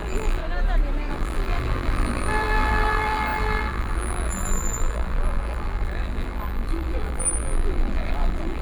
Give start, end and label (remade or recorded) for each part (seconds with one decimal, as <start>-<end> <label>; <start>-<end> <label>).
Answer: 0.0-0.4 remade; 0.4-1.1 recorded; 1.1-8.6 remade